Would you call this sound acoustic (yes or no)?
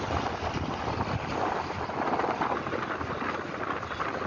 yes